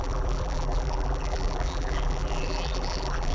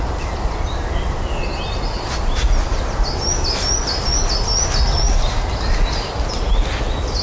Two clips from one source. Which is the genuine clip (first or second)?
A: second